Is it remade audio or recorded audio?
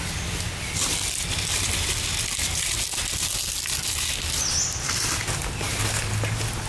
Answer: recorded